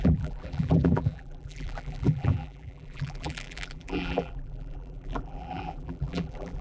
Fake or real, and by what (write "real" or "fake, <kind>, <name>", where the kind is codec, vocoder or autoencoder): fake, vocoder, BigVGAN v2